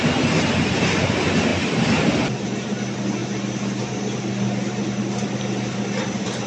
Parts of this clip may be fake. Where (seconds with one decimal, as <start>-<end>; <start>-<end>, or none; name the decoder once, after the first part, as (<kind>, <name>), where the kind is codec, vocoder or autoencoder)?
none